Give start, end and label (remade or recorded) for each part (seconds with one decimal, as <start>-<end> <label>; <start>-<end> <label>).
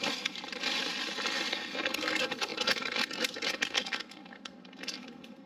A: 0.0-0.4 remade; 0.4-1.5 recorded; 1.5-5.5 remade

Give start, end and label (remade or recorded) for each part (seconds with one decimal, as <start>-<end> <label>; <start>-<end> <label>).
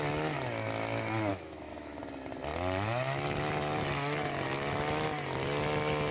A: 0.0-1.3 recorded; 1.3-2.0 remade; 2.0-6.1 recorded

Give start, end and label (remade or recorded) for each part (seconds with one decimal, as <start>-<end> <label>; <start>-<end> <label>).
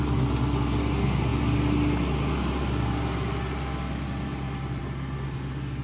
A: 0.0-5.8 recorded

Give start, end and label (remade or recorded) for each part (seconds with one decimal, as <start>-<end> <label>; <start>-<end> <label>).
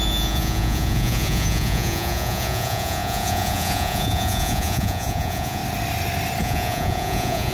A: 0.0-5.6 remade; 5.6-6.4 recorded; 6.4-7.5 remade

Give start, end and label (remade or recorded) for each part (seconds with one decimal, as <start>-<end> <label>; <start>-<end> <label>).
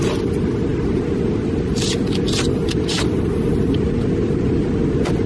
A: 0.0-5.3 recorded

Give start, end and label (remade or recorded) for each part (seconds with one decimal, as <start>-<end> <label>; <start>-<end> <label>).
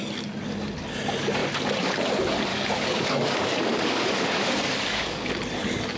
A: 0.0-2.5 recorded; 2.5-5.3 remade; 5.3-6.0 recorded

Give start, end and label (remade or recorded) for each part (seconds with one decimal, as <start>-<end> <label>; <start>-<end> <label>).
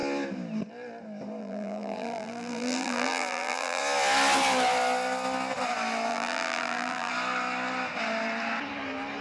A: 0.0-1.4 recorded; 1.4-3.8 remade; 3.8-6.1 recorded; 6.1-7.1 remade; 7.1-9.2 recorded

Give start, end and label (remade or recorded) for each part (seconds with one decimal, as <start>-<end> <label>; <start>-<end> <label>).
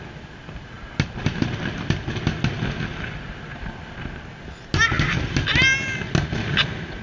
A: 0.0-7.0 recorded